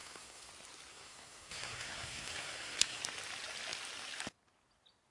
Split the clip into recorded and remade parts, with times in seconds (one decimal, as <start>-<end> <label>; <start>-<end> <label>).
0.0-0.5 remade; 0.5-0.9 recorded; 0.9-3.0 remade; 3.0-5.1 recorded

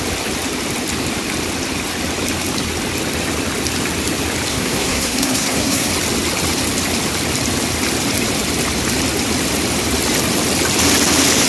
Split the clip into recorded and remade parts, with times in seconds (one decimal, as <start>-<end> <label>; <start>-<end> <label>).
0.0-4.5 recorded; 4.5-5.9 remade; 5.9-11.5 recorded

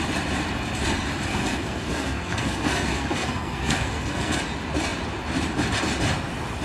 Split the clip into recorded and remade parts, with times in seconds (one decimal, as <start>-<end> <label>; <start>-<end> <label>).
0.0-1.3 recorded; 1.3-4.4 remade; 4.4-6.6 recorded

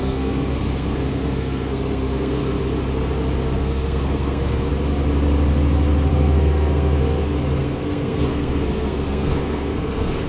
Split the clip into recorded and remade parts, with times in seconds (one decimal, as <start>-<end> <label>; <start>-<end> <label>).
0.0-2.4 remade; 2.4-3.6 recorded; 3.6-4.7 remade; 4.7-6.1 recorded; 6.1-7.0 remade; 7.0-7.6 recorded; 7.6-10.3 remade

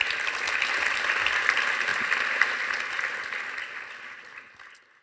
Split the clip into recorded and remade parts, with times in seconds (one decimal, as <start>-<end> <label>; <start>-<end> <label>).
0.0-5.0 recorded

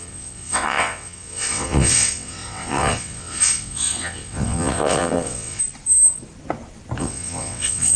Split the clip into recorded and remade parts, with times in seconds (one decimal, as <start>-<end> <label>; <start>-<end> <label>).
0.0-5.6 remade; 5.6-7.0 recorded; 7.0-8.0 remade

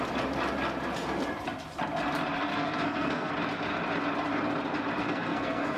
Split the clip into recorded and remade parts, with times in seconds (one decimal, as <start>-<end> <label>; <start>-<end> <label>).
0.0-2.5 recorded; 2.5-3.3 remade; 3.3-5.0 recorded; 5.0-5.8 remade

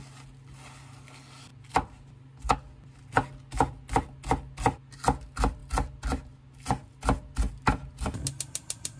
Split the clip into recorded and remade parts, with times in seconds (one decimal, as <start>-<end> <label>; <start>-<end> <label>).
0.0-9.0 recorded